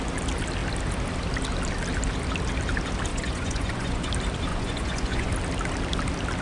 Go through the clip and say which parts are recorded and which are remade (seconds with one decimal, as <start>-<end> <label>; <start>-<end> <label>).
0.0-3.1 recorded; 3.1-4.1 remade; 4.1-4.5 recorded; 4.5-5.3 remade; 5.3-6.4 recorded